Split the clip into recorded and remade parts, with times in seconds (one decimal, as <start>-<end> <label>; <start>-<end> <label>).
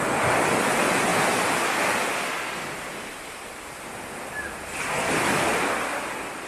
0.0-6.5 recorded